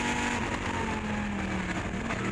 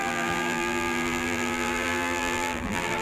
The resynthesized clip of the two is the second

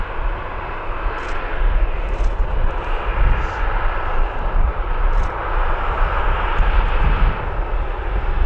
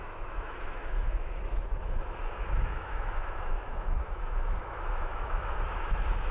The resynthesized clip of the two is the second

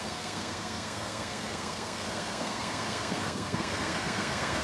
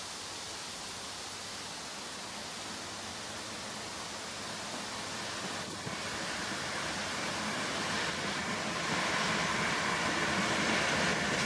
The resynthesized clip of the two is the first